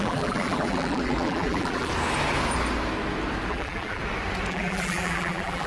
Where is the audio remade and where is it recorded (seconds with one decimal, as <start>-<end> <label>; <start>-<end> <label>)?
0.0-1.9 remade; 1.9-3.5 recorded; 3.5-4.0 remade; 4.0-4.5 recorded; 4.5-5.7 remade